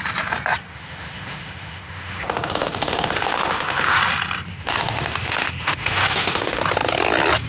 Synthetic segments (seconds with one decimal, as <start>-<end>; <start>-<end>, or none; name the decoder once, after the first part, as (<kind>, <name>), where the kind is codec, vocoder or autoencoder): 0.7-4.0 (autoencoder, DAC-VAE); 4.5-6.6